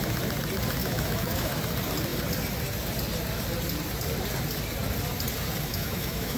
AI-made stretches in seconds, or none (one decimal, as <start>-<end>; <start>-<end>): 0.8-1.6; 5.7-6.4